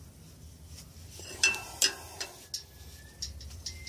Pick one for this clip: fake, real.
real